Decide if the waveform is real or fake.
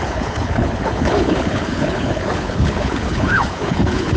fake